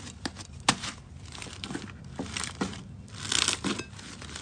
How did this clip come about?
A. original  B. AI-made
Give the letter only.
A